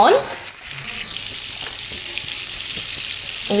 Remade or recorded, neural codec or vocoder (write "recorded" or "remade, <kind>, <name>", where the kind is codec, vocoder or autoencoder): recorded